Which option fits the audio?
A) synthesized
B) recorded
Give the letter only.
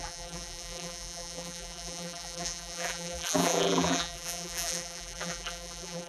A